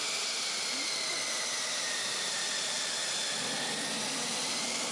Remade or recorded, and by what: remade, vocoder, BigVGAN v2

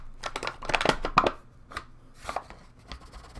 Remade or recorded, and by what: recorded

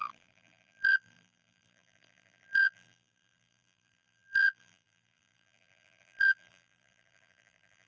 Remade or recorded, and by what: remade, vocoder, BigVGAN v2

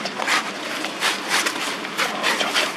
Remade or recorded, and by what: recorded